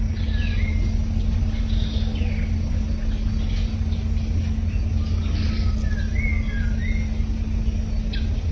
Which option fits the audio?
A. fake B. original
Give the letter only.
B